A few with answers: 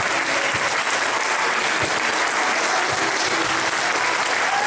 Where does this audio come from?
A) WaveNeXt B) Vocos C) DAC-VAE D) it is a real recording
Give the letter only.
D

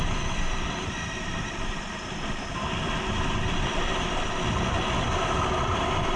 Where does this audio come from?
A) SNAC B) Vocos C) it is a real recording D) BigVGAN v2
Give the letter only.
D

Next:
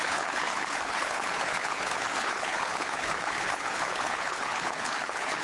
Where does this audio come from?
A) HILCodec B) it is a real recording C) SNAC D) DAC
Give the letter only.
A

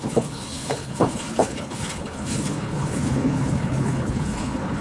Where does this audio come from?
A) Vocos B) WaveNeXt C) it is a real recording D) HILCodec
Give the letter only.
D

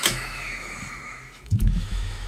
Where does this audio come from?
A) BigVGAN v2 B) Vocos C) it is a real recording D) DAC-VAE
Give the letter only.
D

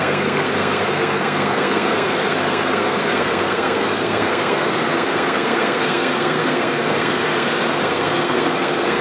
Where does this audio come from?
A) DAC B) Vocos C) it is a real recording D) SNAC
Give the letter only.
D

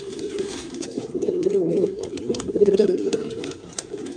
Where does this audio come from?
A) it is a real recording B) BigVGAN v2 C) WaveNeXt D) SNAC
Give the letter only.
D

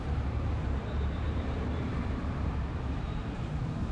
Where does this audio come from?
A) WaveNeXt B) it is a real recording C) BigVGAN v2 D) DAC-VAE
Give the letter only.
C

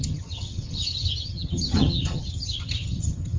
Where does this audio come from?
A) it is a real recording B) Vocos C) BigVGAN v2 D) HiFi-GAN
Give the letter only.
D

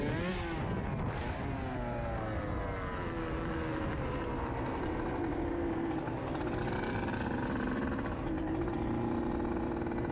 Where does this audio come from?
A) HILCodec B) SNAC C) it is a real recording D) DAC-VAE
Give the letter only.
C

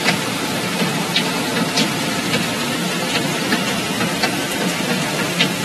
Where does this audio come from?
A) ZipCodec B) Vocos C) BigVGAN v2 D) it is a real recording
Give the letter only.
D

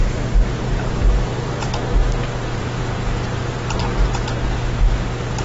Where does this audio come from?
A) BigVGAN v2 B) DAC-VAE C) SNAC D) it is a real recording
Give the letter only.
D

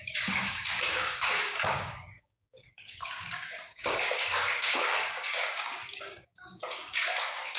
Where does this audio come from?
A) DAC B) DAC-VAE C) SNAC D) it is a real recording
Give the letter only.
A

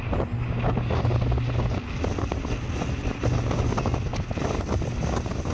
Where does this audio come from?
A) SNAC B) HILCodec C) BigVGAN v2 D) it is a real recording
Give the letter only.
D